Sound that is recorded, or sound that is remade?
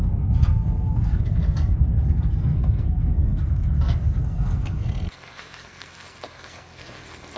remade